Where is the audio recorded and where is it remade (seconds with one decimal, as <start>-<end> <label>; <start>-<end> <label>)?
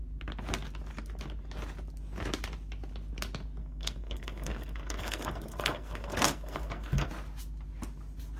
0.0-3.6 recorded; 3.6-7.1 remade; 7.1-8.4 recorded